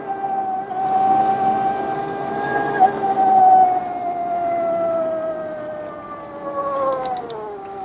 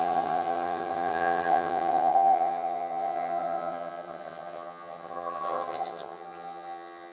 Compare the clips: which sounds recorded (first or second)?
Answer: first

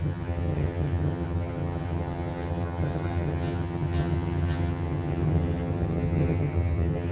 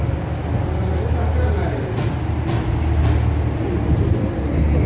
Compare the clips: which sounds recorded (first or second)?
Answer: second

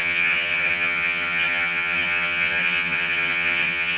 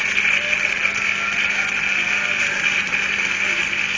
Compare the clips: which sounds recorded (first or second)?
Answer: second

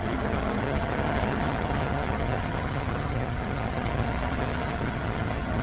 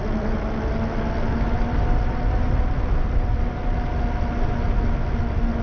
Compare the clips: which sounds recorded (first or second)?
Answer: second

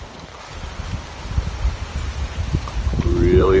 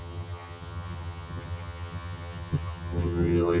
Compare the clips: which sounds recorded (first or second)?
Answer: first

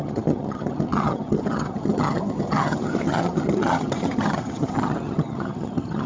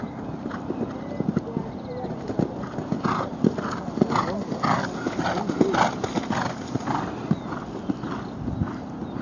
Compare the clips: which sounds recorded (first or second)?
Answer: second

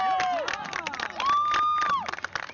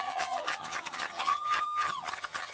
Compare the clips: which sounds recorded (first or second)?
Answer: first